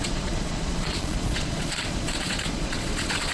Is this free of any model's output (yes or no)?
no